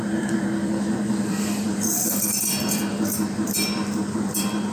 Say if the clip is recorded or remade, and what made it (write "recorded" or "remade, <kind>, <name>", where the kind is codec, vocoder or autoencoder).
remade, vocoder, BigVGAN v2